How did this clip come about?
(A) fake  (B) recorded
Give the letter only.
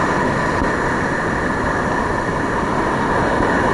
B